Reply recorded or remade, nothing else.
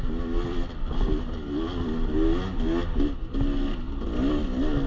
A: recorded